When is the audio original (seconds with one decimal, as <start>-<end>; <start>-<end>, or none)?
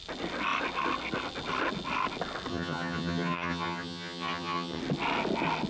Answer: 0.0-2.5; 4.8-5.7